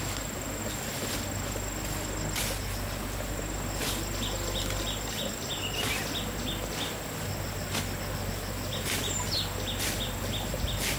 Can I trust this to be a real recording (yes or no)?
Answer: yes